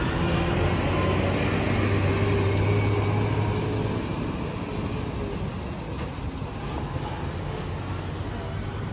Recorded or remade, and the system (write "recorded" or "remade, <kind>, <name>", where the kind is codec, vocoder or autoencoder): recorded